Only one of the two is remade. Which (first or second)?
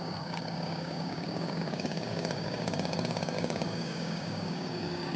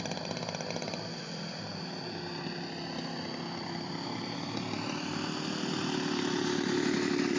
first